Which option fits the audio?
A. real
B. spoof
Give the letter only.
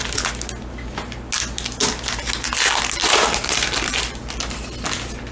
A